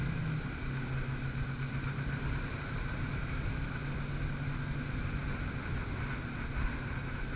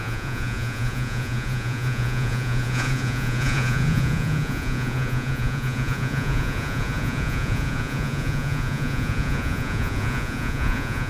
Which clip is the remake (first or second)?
second